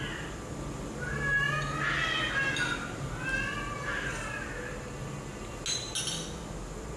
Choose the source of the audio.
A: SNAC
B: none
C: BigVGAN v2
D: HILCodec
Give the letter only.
B